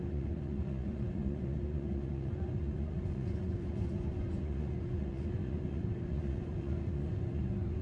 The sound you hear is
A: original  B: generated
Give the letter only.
B